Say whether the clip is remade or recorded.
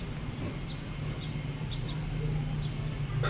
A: recorded